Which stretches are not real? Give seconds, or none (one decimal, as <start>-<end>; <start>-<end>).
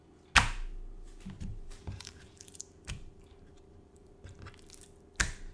1.5-4.1